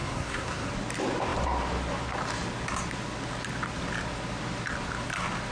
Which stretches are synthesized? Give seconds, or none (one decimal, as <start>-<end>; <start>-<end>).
0.0-0.7